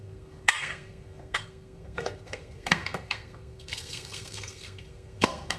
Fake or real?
fake